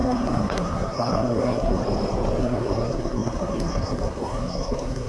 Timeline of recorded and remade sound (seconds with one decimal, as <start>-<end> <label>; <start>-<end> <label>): 0.0-1.8 remade; 1.8-2.4 recorded; 2.4-5.1 remade